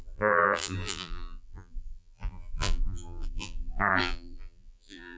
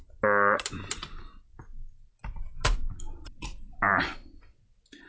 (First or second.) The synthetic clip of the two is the first